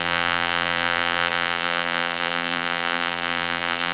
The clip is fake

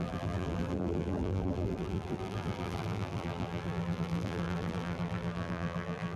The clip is fake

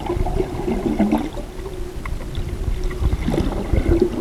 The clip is real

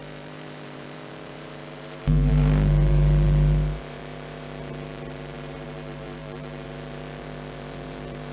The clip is fake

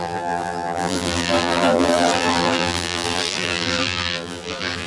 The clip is fake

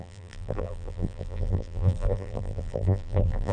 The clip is fake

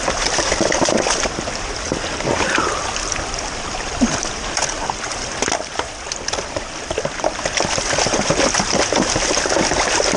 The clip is fake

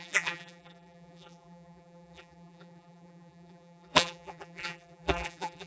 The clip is fake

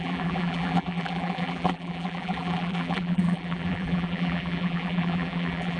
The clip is fake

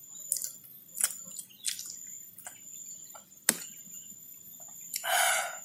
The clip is real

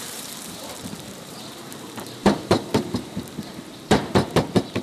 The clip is fake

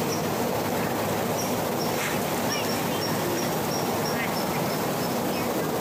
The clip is real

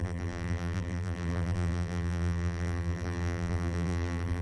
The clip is fake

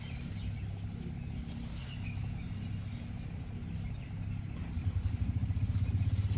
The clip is real